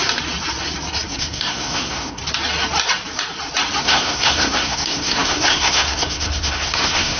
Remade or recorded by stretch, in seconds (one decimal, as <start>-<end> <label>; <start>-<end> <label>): 0.0-1.1 recorded; 1.1-2.2 remade; 2.2-3.8 recorded; 3.8-7.2 remade